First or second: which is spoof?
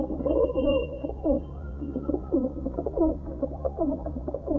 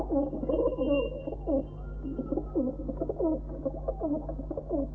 first